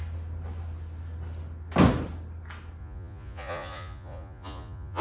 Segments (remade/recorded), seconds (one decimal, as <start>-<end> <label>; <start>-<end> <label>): 0.0-2.8 recorded; 2.8-5.0 remade